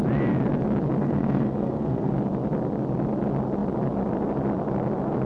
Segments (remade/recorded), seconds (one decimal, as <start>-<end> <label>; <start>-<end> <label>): 0.0-1.0 recorded; 1.0-2.1 remade; 2.1-5.3 recorded